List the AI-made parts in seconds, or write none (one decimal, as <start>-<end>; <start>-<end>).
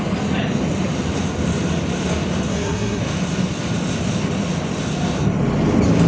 2.5-3.0